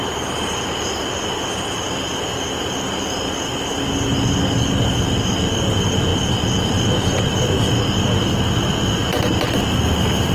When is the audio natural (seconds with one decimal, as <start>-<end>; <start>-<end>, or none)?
0.0-10.3